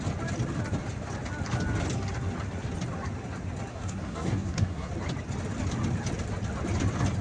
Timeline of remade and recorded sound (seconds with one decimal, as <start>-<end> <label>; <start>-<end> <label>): 0.0-3.7 recorded; 3.7-4.9 remade; 4.9-7.2 recorded